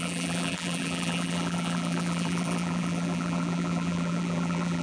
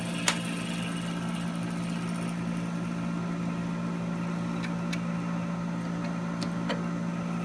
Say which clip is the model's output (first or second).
first